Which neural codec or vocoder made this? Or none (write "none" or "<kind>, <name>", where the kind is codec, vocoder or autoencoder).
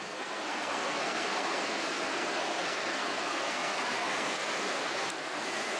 codec, SNAC